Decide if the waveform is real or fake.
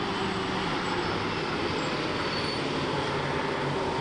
real